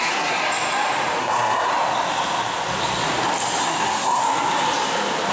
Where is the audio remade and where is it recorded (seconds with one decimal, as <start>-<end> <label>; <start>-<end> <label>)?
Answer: 0.0-0.4 remade; 0.4-1.2 recorded; 1.2-1.7 remade; 1.7-3.6 recorded; 3.6-4.2 remade; 4.2-5.3 recorded